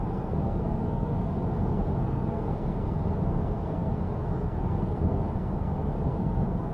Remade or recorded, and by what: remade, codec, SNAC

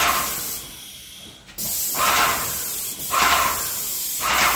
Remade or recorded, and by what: recorded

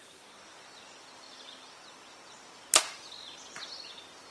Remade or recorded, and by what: recorded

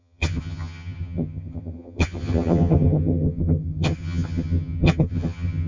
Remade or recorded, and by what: remade, vocoder, HiFi-GAN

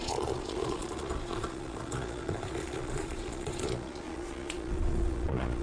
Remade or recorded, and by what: remade, vocoder, Vocos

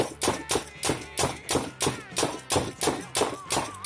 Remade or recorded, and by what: recorded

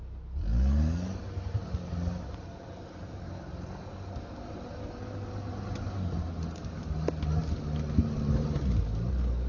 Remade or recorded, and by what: recorded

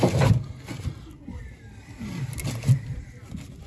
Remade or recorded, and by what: recorded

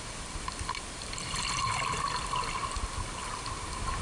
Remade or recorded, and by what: recorded